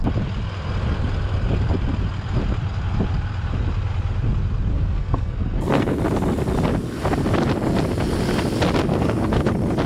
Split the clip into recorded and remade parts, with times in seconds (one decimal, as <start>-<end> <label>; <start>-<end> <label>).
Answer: 0.0-4.7 recorded; 4.7-6.0 remade; 6.0-8.9 recorded; 8.9-9.5 remade; 9.5-9.9 recorded